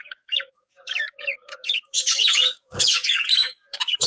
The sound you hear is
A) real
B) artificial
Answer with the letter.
B